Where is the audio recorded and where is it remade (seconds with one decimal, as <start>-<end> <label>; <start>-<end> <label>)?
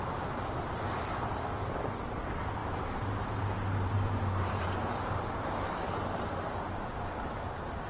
0.0-2.6 recorded; 2.6-6.9 remade; 6.9-7.9 recorded